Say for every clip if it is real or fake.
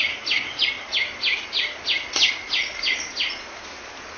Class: real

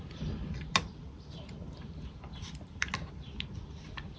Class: real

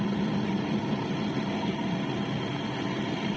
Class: real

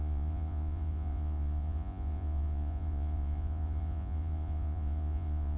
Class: fake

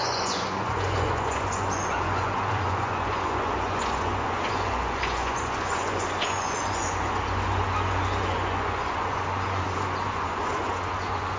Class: fake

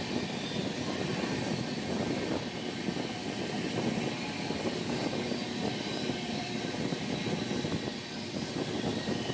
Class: real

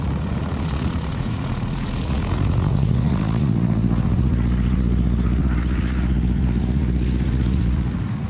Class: fake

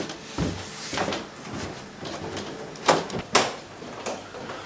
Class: real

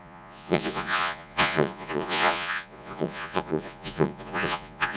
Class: fake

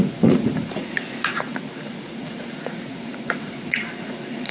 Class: fake